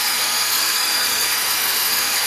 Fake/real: fake